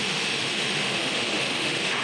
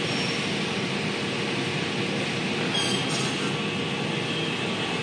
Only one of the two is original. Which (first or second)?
second